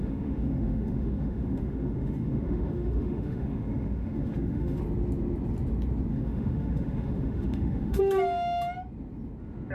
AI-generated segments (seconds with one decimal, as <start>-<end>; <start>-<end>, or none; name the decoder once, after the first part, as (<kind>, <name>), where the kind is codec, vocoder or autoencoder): 0.0-4.8 (autoencoder, DAC-VAE); 6.1-8.0